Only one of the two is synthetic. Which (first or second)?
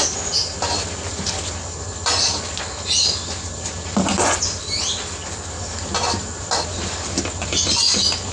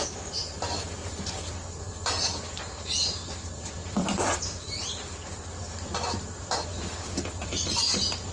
second